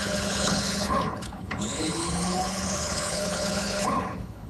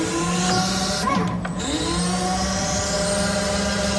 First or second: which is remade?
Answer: first